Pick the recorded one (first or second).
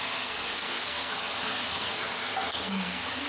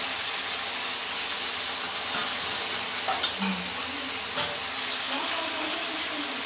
second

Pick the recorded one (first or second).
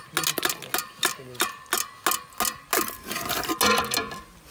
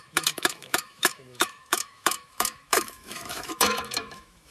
first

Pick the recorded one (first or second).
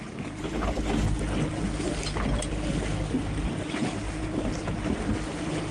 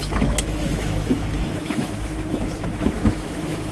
first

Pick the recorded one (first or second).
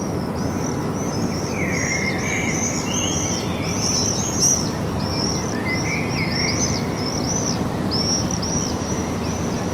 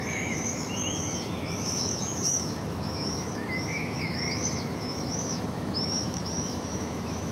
first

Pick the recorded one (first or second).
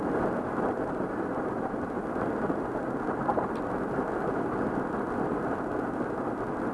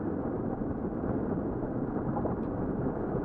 first